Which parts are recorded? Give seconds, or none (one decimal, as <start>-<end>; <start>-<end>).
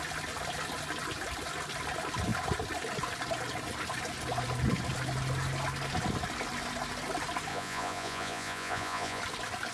0.0-7.5; 9.2-9.7